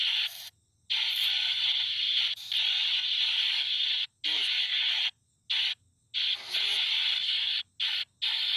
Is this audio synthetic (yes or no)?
no